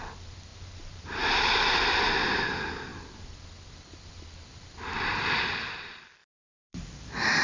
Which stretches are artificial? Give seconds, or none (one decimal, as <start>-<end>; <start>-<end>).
0.5-2.4; 6.2-6.8